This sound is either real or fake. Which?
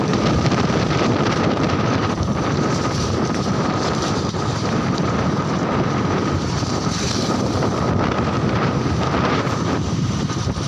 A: fake